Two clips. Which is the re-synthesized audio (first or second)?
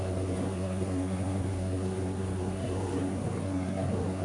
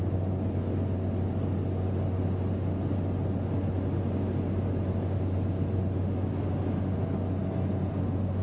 first